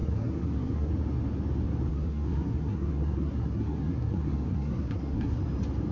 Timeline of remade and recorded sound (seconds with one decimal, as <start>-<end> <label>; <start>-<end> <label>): 0.0-0.9 remade; 0.9-1.9 recorded; 1.9-5.4 remade; 5.4-5.9 recorded